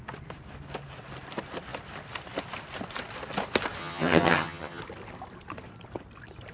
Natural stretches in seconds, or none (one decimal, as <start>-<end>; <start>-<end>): 0.0-3.8; 4.8-6.5